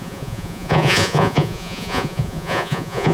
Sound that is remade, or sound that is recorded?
remade